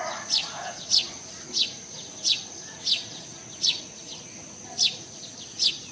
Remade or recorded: remade